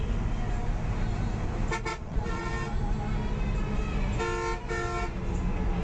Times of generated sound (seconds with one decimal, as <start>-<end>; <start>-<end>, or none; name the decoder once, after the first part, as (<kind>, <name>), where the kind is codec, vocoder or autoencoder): 1.9-2.5 (vocoder, Vocos)